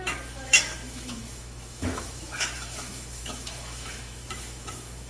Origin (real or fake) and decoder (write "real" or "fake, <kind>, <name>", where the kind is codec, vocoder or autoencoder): fake, autoencoder, DAC-VAE